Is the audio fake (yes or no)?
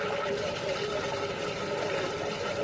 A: no